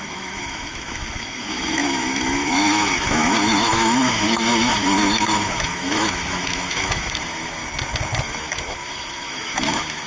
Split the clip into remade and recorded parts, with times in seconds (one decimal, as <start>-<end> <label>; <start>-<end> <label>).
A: 0.0-7.6 remade; 7.6-8.2 recorded; 8.2-10.1 remade